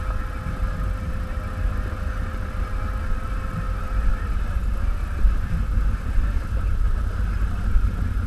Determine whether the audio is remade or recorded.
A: recorded